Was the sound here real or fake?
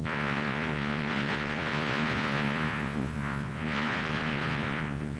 fake